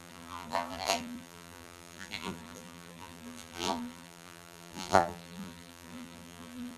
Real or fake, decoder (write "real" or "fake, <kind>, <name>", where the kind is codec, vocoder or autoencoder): fake, vocoder, BigVGAN v2